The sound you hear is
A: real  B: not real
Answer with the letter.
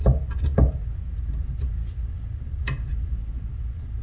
A